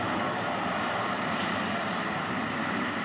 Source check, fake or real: fake